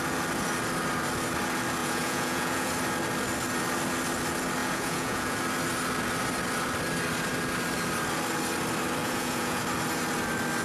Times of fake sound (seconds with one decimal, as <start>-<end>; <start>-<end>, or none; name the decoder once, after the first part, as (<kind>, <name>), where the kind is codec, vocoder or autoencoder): 1.8-2.7 (vocoder, Vocos); 4.6-5.4; 9.0-9.6